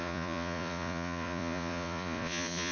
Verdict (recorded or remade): remade